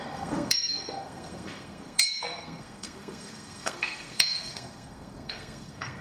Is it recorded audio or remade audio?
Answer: remade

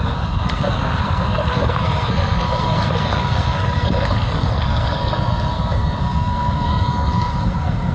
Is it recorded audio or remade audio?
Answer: remade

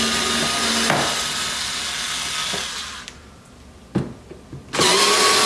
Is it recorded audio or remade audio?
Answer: recorded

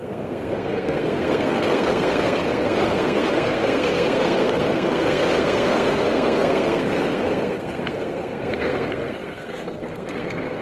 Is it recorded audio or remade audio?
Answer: remade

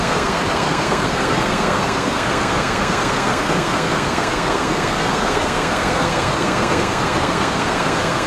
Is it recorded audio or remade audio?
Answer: remade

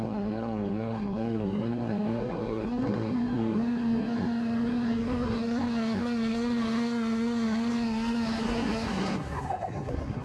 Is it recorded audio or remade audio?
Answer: remade